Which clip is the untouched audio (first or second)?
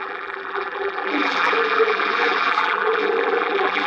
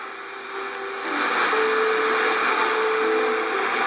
second